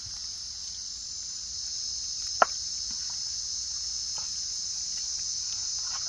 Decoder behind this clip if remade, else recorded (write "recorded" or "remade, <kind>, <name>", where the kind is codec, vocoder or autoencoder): recorded